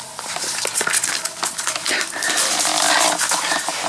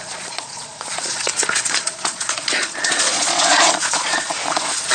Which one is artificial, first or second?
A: second